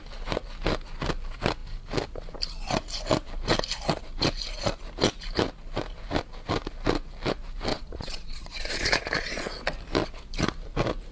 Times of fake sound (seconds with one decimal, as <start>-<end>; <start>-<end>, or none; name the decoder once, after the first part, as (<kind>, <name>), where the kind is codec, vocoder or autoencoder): 7.7-9.5 (vocoder, Vocos)